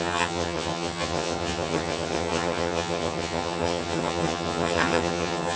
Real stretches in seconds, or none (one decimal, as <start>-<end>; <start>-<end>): none